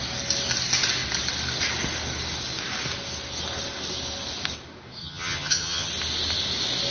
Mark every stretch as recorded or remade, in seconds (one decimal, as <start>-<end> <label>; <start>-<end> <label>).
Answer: 0.0-5.0 recorded; 5.0-5.9 remade; 5.9-6.9 recorded